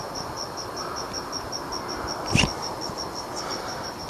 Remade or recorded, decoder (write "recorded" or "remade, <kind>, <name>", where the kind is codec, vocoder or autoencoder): recorded